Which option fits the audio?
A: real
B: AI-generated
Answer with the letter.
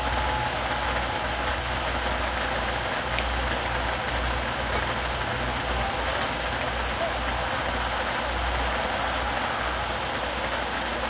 A